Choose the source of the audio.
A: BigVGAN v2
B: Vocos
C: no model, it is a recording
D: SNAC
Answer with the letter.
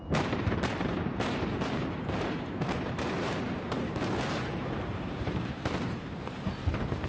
A